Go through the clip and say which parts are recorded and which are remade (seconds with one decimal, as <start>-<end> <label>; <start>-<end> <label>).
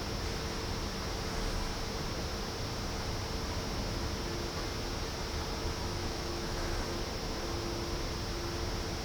0.0-5.9 recorded; 5.9-6.7 remade; 6.7-9.0 recorded